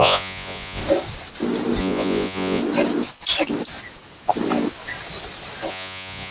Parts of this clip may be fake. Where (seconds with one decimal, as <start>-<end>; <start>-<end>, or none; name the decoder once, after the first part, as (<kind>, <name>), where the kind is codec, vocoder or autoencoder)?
0.0-0.8 (vocoder, Vocos); 1.8-2.6; 5.7-6.3